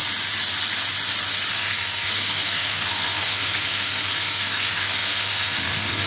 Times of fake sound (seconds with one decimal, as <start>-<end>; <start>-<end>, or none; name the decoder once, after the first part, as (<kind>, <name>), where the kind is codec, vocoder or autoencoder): 1.5-6.1 (codec, SNAC)